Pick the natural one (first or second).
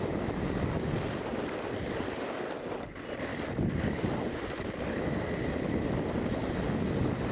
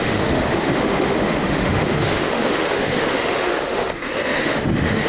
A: first